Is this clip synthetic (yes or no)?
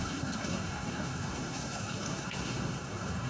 yes